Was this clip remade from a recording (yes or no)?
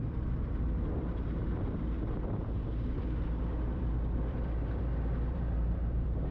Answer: yes